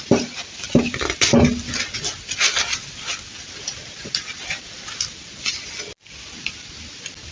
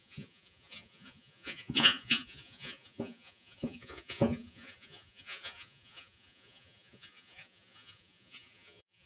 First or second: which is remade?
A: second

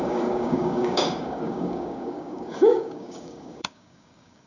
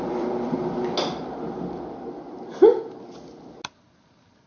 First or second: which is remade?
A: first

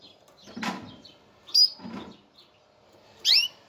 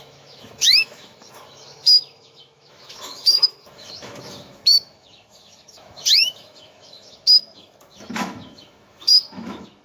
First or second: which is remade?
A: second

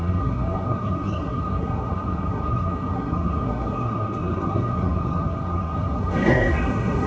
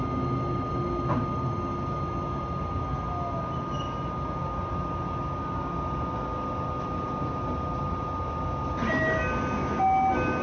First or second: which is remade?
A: first